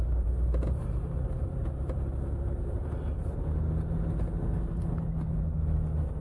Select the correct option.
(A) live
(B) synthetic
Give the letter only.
A